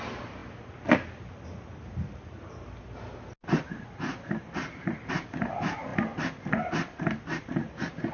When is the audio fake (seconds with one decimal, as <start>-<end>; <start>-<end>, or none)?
none